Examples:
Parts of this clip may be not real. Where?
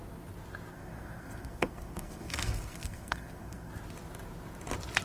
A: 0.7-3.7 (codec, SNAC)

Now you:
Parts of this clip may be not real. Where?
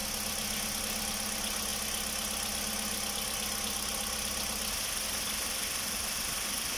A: none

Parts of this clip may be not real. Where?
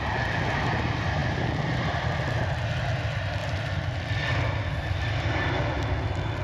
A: 1.2-2.2 (vocoder, BigVGAN v2); 3.4-4.5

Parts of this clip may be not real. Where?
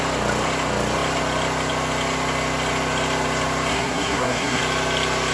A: 3.7-4.6 (codec, SNAC)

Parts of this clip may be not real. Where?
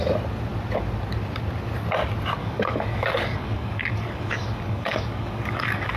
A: 2.4-6.0 (codec, DAC)